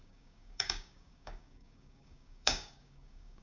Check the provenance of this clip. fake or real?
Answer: fake